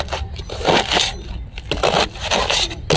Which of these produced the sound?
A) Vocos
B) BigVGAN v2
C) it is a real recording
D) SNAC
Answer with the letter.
C